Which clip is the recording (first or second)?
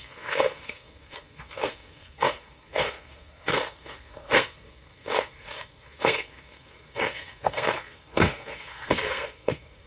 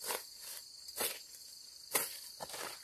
second